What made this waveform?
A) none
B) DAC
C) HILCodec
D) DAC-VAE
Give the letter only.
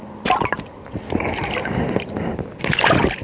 A